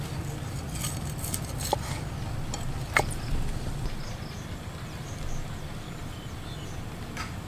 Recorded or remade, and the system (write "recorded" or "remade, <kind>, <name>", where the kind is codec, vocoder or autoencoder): recorded